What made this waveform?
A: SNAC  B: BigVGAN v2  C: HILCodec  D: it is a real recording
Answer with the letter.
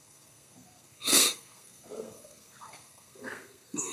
A